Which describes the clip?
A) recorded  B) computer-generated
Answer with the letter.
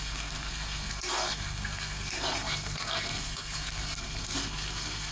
B